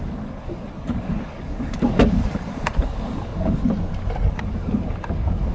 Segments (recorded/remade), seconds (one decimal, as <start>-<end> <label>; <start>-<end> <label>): 0.0-3.6 remade; 3.6-4.3 recorded; 4.3-5.5 remade